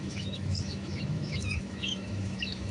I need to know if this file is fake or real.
fake